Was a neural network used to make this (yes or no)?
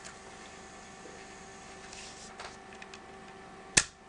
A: no